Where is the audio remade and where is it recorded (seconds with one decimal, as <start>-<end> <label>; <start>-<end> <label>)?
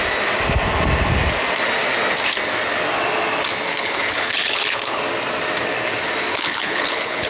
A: 0.0-3.7 recorded; 3.7-5.0 remade; 5.0-6.3 recorded; 6.3-7.3 remade